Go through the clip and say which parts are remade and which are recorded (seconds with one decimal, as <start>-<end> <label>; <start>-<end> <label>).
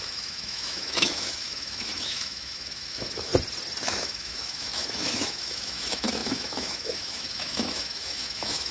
0.0-3.3 remade; 3.3-3.8 recorded; 3.8-8.7 remade